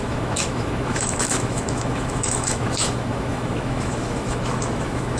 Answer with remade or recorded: remade